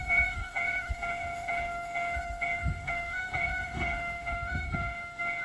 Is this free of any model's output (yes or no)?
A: no